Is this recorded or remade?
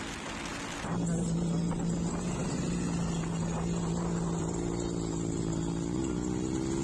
recorded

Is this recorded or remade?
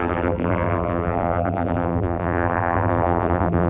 remade